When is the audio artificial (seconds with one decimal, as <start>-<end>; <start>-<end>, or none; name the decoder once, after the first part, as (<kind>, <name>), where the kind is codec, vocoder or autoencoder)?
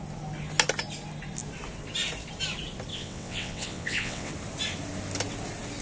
2.9-4.3 (vocoder, WaveNeXt)